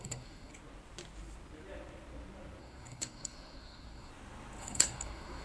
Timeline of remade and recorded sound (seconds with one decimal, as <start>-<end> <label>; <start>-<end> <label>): 0.0-0.5 remade; 0.5-2.6 recorded; 2.6-4.1 remade; 4.1-4.6 recorded; 4.6-5.4 remade